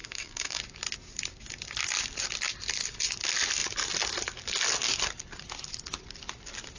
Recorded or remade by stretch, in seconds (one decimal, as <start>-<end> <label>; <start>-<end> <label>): 0.0-0.6 remade; 0.6-6.8 recorded